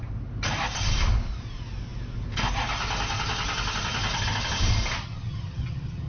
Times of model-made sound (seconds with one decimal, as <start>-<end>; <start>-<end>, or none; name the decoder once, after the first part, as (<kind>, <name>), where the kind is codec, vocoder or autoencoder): 5.0-6.1 (vocoder, HiFi-GAN)

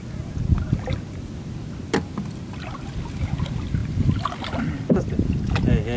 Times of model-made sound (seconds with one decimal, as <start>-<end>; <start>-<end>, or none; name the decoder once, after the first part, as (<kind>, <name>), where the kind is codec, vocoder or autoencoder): none

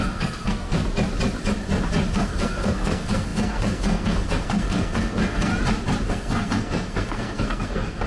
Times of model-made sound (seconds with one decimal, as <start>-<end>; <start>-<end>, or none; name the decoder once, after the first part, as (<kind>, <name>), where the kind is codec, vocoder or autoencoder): 0.0-0.8 (codec, SNAC); 2.1-5.5; 6.1-8.1